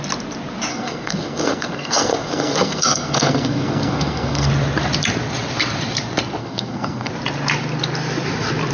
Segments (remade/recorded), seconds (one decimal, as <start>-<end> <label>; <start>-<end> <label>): 0.0-0.7 recorded; 0.7-4.5 remade; 4.5-6.4 recorded; 6.4-7.1 remade; 7.1-8.7 recorded